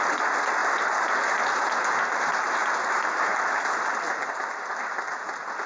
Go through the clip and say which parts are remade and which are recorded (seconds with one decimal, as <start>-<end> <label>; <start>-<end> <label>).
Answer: 0.0-5.7 recorded